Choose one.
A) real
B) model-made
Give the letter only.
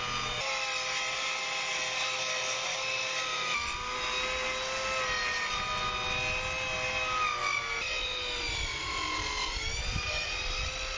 A